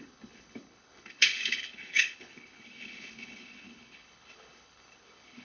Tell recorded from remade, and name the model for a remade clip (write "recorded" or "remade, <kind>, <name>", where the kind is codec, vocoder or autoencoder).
remade, codec, HILCodec